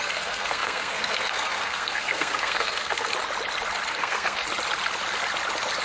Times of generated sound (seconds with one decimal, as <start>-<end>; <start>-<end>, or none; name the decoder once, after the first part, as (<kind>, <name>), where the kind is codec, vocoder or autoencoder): 0.0-3.1 (codec, SNAC); 3.9-4.4